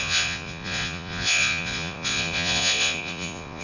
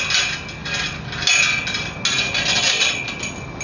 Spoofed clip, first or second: first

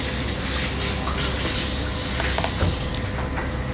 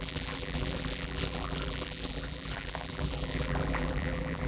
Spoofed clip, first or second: second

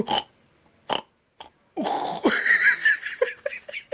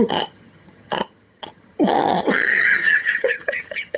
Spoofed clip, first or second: second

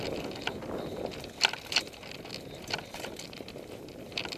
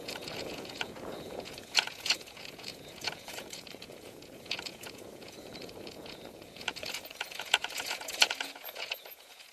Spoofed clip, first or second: second